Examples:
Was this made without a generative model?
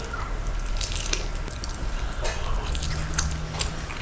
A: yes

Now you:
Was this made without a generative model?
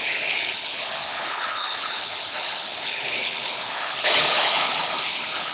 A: no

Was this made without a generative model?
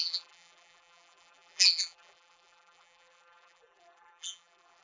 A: no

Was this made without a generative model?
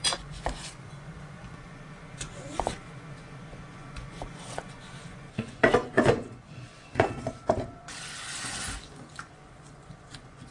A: no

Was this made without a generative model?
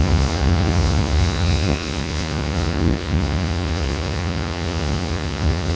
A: no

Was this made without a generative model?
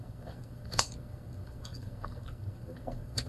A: no